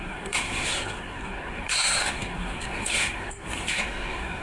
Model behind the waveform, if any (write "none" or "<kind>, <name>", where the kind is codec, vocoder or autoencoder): codec, SNAC